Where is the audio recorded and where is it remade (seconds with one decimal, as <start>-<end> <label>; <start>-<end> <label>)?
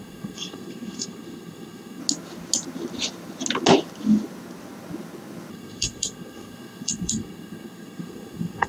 0.0-2.0 remade; 2.0-5.5 recorded; 5.5-8.7 remade